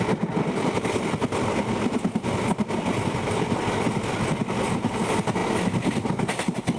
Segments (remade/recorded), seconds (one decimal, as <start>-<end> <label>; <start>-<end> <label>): 0.0-6.8 recorded